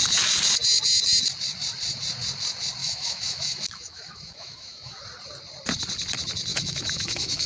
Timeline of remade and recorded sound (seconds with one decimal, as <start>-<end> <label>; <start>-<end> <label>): 0.0-2.8 recorded; 2.8-5.0 remade; 5.0-6.5 recorded; 6.5-7.5 remade